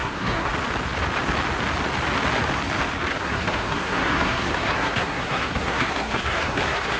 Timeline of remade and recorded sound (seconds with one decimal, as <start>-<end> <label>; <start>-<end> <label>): 0.0-0.5 remade; 0.5-3.1 recorded; 3.1-7.0 remade